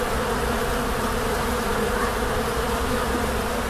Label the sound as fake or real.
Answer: real